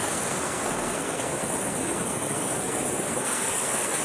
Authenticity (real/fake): fake